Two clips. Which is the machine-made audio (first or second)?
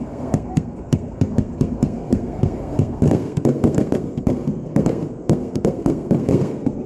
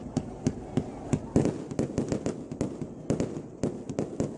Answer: first